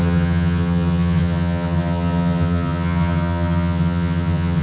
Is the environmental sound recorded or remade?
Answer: remade